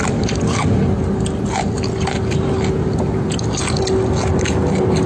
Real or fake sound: real